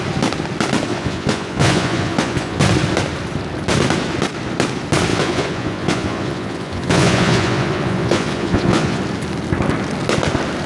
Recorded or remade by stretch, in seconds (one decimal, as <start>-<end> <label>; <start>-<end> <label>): 0.0-0.9 recorded; 0.9-2.6 remade; 2.6-5.1 recorded; 5.1-9.0 remade; 9.0-10.7 recorded